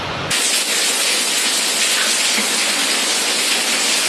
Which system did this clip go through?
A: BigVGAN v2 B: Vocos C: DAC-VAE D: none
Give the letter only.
B